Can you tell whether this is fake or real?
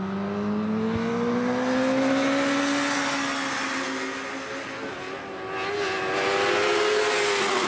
real